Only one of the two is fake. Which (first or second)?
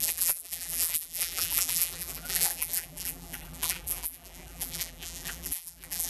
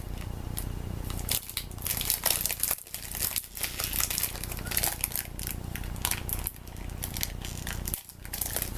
first